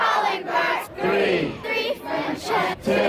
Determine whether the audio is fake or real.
fake